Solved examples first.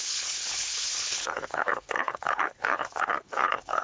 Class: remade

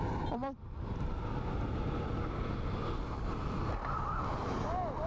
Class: recorded